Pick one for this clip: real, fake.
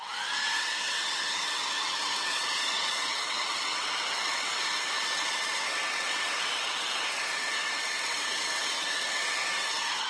fake